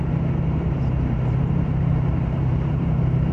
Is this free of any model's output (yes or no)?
no